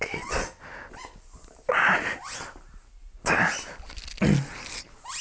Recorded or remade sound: recorded